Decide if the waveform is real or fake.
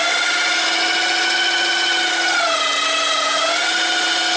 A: real